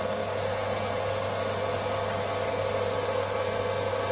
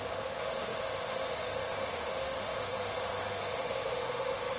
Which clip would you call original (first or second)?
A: first